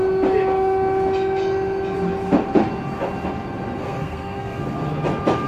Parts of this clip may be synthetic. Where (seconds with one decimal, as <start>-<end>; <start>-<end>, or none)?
3.8-4.6